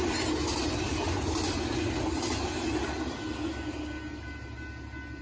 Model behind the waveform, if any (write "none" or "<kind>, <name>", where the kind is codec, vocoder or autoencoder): none